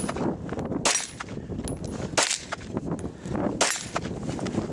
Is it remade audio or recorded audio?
recorded